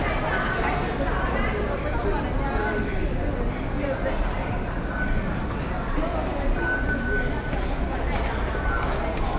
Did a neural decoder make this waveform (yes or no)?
no